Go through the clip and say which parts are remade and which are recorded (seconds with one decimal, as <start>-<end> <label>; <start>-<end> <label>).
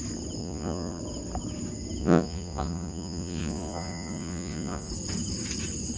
0.0-0.4 recorded; 0.4-1.0 remade; 1.0-2.0 recorded; 2.0-4.9 remade; 4.9-6.0 recorded